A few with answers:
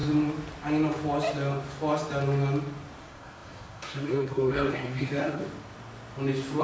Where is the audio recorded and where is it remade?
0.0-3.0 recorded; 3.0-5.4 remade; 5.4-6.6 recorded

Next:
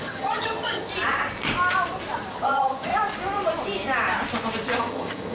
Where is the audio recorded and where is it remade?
0.0-0.9 remade; 0.9-2.3 recorded; 2.3-2.9 remade; 2.9-4.8 recorded; 4.8-5.3 remade

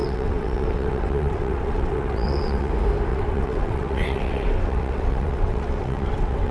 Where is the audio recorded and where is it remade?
0.0-2.7 remade; 2.7-3.1 recorded; 3.1-6.5 remade